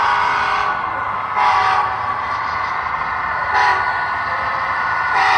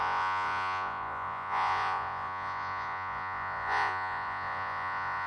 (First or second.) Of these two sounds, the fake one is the second